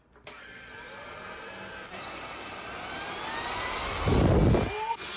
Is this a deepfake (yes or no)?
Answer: no